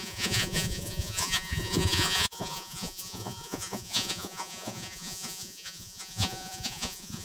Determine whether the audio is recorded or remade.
remade